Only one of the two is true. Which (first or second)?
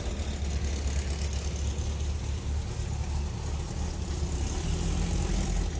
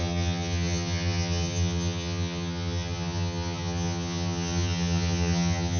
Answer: first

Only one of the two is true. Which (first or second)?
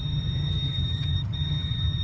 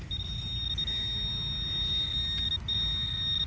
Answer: second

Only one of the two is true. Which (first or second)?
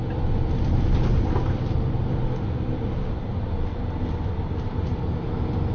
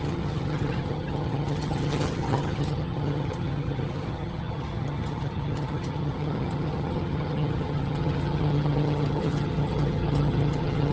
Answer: first